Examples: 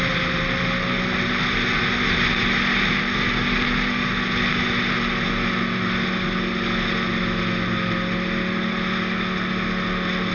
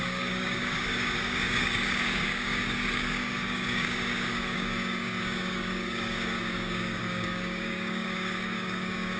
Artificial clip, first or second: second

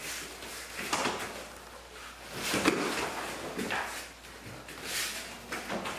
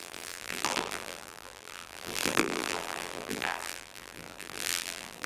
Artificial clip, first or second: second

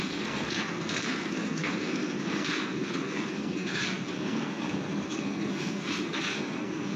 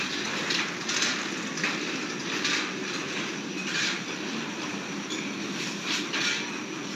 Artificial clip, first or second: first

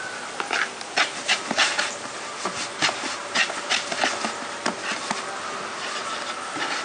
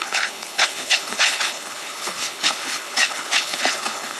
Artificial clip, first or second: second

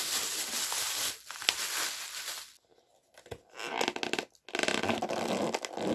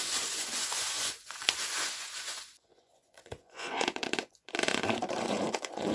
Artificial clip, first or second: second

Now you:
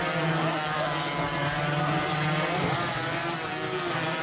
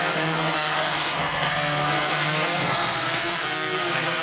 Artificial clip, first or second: second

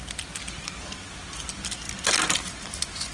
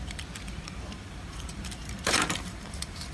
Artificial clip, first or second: second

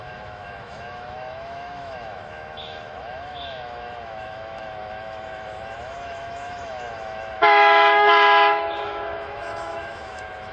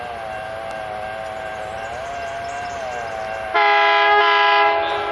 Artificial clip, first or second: first